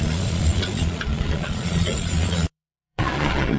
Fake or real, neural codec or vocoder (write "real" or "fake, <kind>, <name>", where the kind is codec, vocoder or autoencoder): fake, vocoder, Vocos